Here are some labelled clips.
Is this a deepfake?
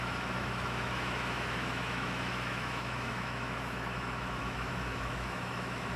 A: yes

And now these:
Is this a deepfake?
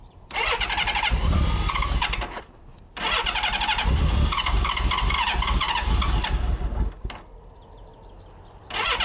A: no